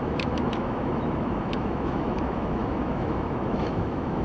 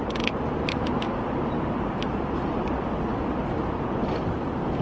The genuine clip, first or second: second